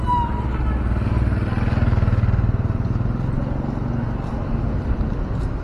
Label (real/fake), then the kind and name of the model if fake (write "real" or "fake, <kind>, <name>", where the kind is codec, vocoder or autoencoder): real